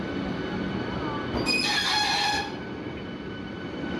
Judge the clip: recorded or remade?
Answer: remade